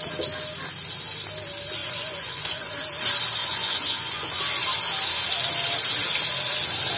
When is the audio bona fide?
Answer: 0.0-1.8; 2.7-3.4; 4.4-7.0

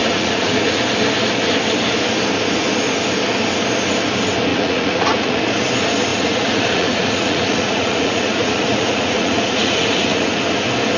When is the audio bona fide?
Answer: 0.8-4.5; 5.4-6.1; 10.4-11.0

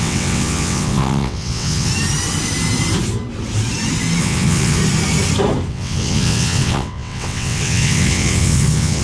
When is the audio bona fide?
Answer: 1.9-4.2; 4.8-5.7

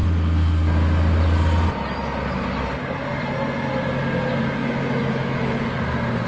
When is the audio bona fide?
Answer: 0.0-4.6; 5.7-6.3

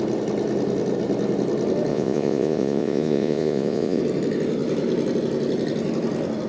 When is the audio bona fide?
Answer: 0.0-1.9; 4.0-6.5

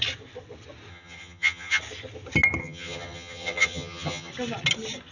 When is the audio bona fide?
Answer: 0.0-0.9; 1.8-2.6; 4.3-5.1

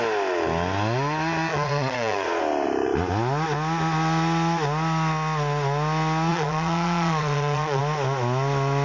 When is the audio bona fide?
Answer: 0.0-1.5; 2.4-6.3; 7.8-8.8

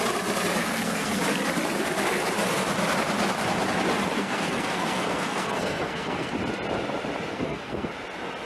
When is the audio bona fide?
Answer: 0.0-0.6; 1.2-4.2; 6.3-7.3; 7.9-8.5